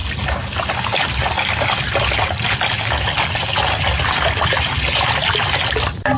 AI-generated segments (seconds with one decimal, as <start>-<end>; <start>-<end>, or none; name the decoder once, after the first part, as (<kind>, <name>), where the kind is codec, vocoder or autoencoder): none